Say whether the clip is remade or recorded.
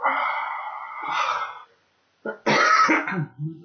recorded